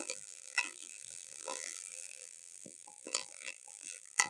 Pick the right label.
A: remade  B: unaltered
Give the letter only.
A